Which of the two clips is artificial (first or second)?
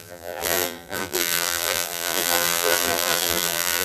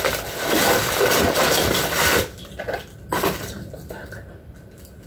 first